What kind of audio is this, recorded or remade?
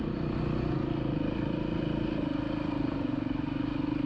recorded